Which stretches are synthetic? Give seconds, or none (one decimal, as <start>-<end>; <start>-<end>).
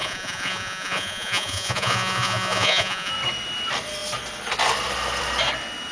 0.0-3.1